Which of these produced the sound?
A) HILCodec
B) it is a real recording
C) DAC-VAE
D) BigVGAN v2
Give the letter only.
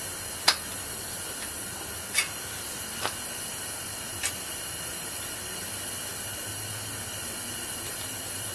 B